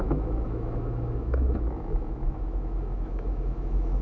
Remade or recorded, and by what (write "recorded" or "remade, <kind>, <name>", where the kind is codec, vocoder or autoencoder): remade, autoencoder, DAC-VAE